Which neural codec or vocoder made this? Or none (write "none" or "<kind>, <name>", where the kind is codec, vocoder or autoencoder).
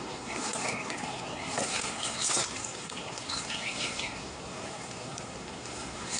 codec, SNAC